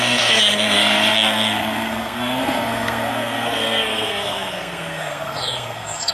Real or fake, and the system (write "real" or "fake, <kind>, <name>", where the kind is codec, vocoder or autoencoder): fake, codec, SNAC